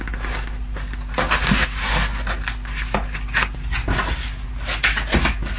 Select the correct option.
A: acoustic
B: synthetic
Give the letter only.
A